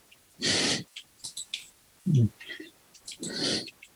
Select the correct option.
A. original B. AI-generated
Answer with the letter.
A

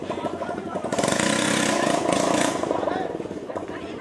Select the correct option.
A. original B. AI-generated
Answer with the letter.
B